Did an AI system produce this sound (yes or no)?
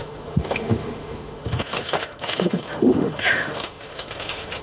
yes